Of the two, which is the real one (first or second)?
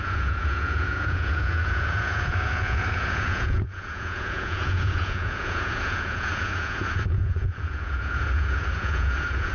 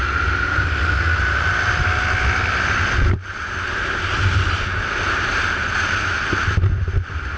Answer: second